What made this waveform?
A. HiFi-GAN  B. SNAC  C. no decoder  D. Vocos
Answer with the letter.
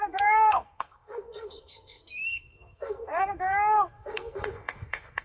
B